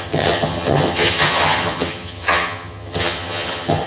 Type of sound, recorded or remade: remade